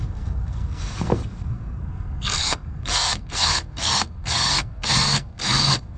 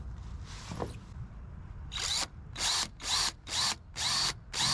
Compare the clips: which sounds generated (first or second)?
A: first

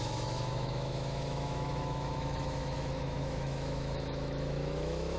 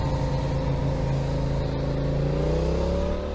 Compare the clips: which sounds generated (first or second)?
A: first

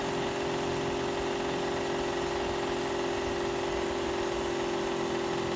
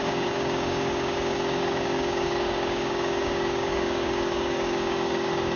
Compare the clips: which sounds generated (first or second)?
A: second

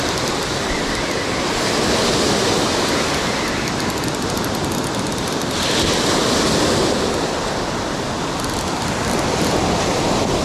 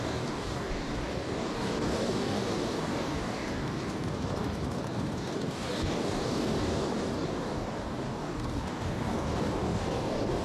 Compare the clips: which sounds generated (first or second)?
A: second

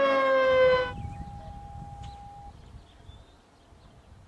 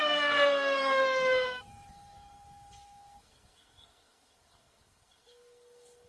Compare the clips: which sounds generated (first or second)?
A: second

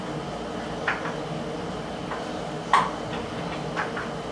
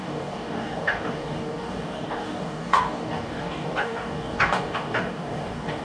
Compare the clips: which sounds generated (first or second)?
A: second